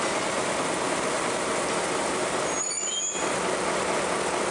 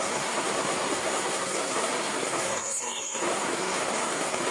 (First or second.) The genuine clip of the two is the first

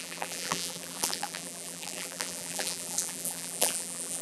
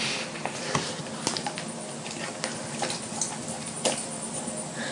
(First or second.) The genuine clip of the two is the second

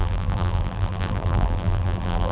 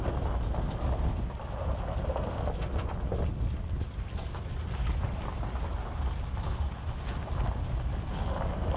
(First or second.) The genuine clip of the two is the second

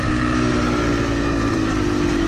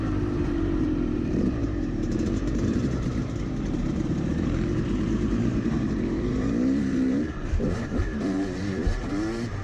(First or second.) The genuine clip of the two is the first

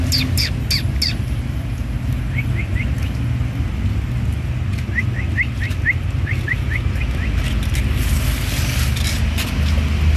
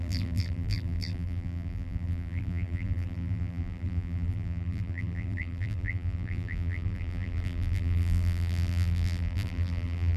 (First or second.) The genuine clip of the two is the first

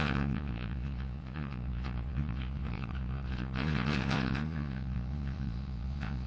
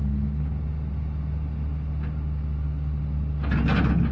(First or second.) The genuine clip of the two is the second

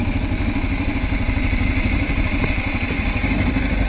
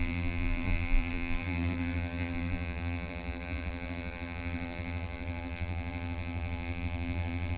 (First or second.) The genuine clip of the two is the first